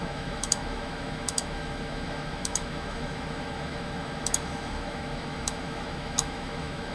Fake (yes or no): yes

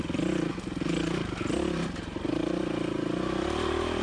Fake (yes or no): no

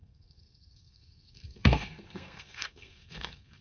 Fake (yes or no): yes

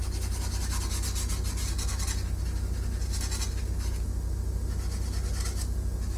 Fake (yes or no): no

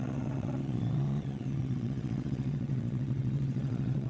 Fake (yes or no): yes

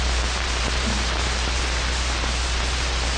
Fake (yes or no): no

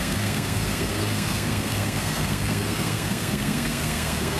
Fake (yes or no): yes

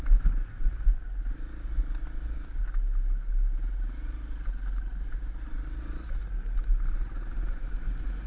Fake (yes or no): no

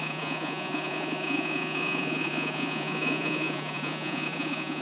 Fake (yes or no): yes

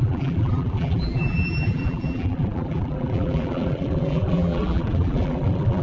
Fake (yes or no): yes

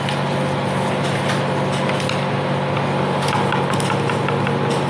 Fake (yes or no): no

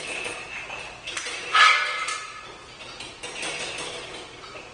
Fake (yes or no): yes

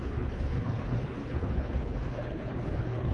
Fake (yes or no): yes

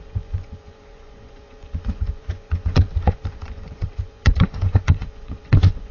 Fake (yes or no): yes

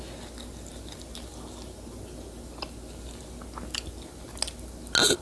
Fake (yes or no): no